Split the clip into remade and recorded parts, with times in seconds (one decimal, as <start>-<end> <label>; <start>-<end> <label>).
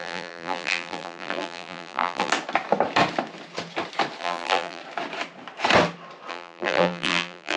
0.0-2.3 remade; 2.3-4.2 recorded; 4.2-4.8 remade; 4.8-6.3 recorded; 6.3-7.6 remade